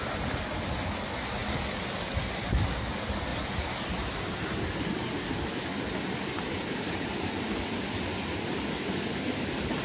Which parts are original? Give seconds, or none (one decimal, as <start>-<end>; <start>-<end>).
0.0-9.8